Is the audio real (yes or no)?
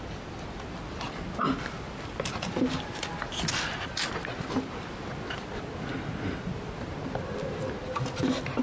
yes